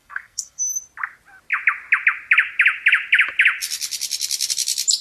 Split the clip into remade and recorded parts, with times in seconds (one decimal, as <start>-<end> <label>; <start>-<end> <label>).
0.0-0.6 remade; 0.6-5.0 recorded